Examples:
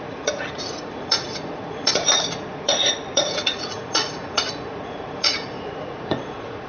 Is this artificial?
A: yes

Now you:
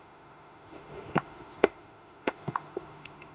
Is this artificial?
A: yes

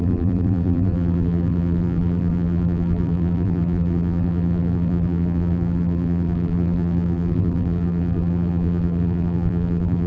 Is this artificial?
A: yes